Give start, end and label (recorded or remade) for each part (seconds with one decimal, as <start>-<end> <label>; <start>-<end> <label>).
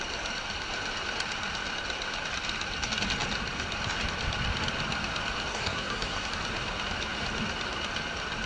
0.0-5.5 recorded; 5.5-6.3 remade; 6.3-8.5 recorded